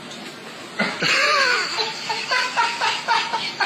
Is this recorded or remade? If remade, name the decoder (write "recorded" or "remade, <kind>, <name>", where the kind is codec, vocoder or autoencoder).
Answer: recorded